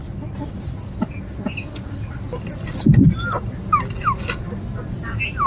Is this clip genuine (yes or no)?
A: yes